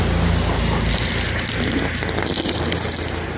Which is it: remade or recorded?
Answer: recorded